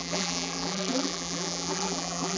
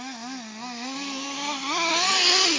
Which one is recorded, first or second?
second